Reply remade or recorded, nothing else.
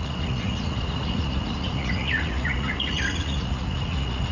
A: remade